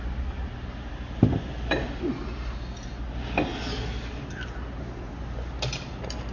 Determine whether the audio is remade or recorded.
recorded